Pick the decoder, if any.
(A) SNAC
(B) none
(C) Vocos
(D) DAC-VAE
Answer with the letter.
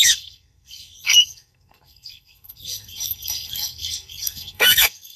A